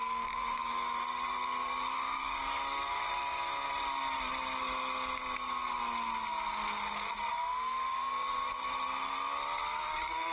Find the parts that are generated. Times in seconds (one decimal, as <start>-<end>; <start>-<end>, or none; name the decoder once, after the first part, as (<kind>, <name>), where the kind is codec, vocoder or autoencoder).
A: 0.0-3.7 (codec, DAC); 7.3-8.4; 9.6-10.3